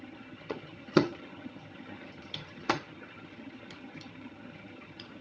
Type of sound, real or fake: fake